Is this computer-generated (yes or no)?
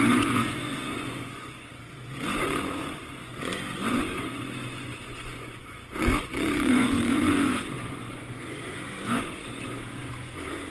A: yes